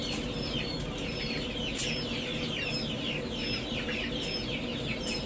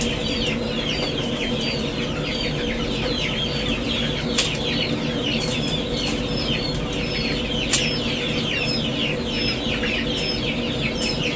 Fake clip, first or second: first